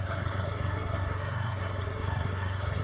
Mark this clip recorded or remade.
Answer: remade